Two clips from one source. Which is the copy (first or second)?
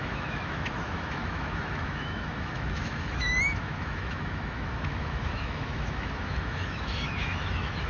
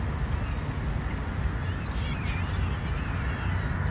first